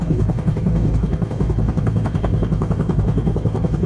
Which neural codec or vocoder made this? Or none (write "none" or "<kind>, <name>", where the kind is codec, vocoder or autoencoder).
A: codec, DAC